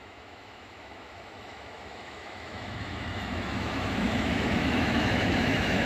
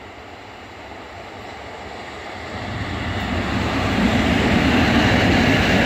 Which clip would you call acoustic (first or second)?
second